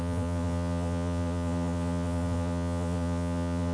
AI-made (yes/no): yes